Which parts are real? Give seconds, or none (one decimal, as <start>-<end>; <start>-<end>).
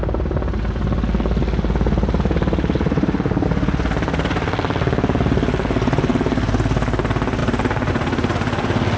0.0-9.0